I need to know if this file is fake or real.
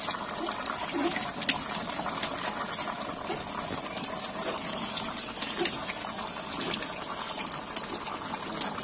real